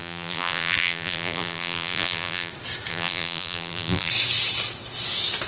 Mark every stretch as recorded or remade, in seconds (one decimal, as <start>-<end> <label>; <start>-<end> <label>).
0.0-2.5 remade; 2.5-2.9 recorded; 2.9-4.1 remade; 4.1-5.5 recorded